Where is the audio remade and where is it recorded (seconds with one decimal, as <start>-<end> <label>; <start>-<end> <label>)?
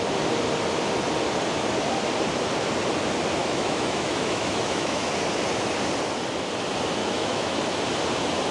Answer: 0.0-3.4 recorded; 3.4-5.1 remade; 5.1-7.0 recorded; 7.0-7.6 remade; 7.6-8.5 recorded